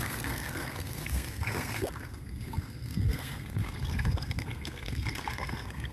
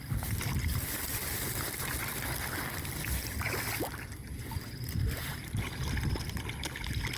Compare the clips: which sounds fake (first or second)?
first